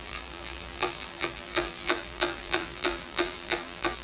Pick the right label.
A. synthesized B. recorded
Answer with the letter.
A